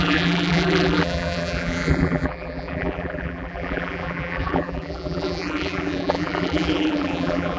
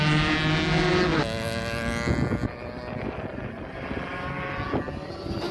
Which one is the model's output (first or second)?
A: first